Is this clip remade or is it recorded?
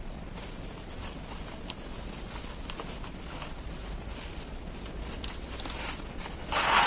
recorded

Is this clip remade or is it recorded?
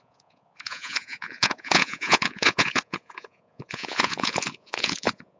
remade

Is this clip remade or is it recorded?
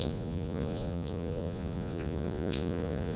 remade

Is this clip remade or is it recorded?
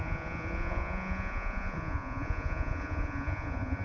remade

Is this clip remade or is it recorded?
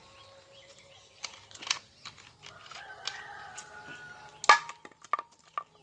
recorded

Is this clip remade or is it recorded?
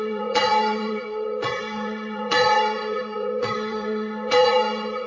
remade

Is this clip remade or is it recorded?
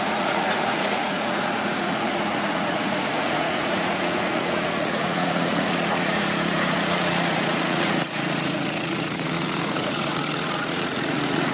remade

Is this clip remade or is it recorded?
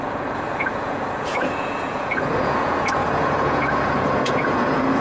remade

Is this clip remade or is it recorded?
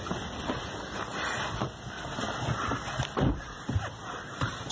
recorded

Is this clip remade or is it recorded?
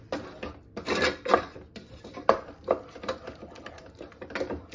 recorded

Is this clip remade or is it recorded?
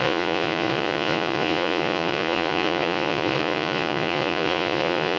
remade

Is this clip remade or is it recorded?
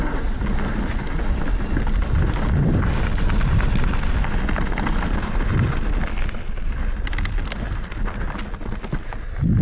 recorded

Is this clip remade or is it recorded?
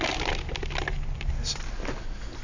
recorded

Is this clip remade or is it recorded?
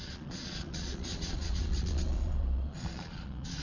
remade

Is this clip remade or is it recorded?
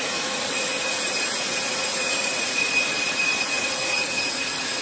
remade